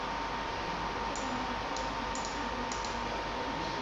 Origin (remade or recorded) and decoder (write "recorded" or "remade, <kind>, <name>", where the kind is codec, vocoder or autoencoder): recorded